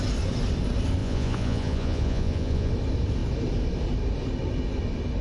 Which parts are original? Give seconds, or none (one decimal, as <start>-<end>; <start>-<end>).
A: 0.0-1.0; 2.7-5.2